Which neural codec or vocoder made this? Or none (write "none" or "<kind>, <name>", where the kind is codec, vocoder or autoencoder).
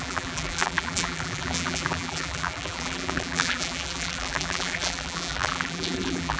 vocoder, BigVGAN v2